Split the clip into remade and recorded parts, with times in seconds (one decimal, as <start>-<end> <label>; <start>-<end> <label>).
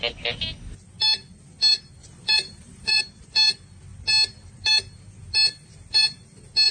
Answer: 0.0-2.0 recorded; 2.0-3.0 remade; 3.0-6.7 recorded